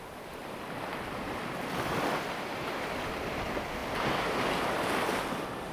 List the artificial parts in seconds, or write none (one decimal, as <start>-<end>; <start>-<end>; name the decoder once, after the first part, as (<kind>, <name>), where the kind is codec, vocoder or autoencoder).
none